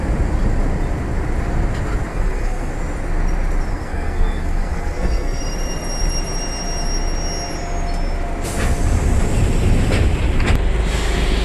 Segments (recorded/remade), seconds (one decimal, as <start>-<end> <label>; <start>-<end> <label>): 0.0-2.1 recorded; 2.1-2.7 remade; 2.7-3.7 recorded; 3.7-5.4 remade; 5.4-11.4 recorded